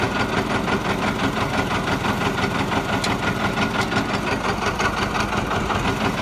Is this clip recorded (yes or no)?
yes